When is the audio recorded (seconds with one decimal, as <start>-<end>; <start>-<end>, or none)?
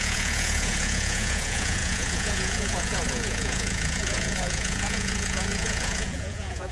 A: none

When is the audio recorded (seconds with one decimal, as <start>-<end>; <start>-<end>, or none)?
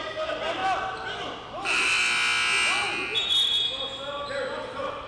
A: 0.0-5.1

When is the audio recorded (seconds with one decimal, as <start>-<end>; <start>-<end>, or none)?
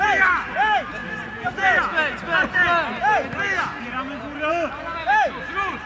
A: 0.0-5.9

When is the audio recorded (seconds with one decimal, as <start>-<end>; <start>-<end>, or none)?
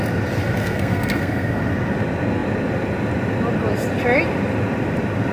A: 0.0-0.6; 1.6-5.3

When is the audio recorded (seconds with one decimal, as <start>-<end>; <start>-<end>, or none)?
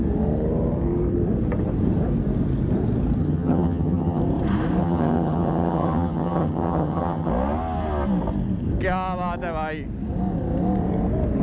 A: 0.0-3.2; 4.2-4.8; 7.3-11.4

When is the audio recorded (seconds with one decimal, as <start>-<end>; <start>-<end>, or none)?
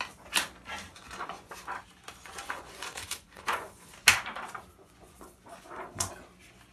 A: 0.0-0.9; 1.5-2.2; 3.9-4.8; 6.1-6.7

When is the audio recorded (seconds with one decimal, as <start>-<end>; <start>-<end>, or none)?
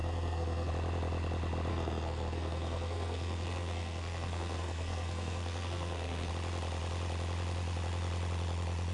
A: 0.7-1.7; 6.3-8.9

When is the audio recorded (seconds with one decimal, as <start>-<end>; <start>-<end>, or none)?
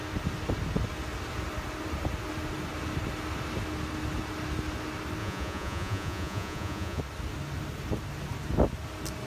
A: 0.0-5.2; 7.0-9.3